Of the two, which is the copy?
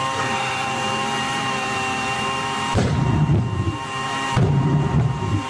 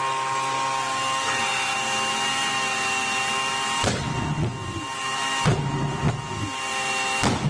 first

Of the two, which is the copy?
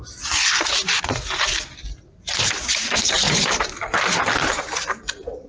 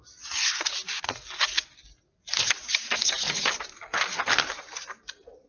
first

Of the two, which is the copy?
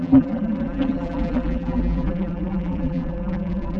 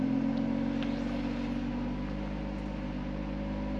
first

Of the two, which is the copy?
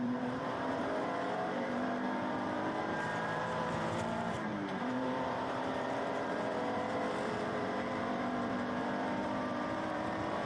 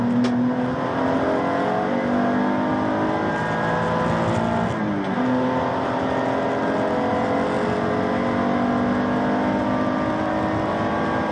first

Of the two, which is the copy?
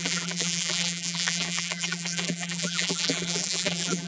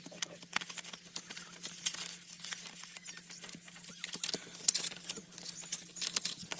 first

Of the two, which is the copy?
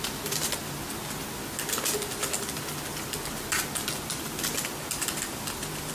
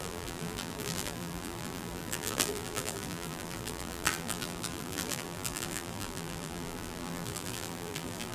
second